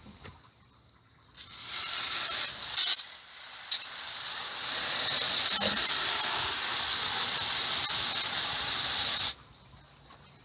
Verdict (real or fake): real